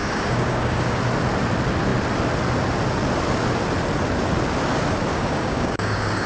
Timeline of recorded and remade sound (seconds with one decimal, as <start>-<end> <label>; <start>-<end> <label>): 0.0-1.0 remade; 1.0-5.1 recorded; 5.1-6.3 remade